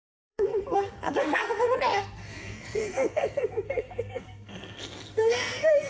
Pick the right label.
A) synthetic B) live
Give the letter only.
A